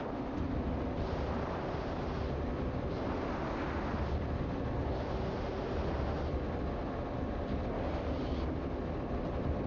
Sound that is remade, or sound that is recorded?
recorded